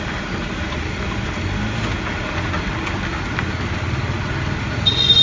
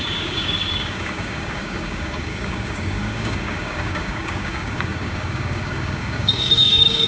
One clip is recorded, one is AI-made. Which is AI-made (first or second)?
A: second